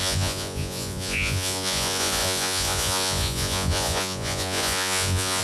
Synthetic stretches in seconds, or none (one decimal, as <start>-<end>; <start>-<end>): 0.0-5.4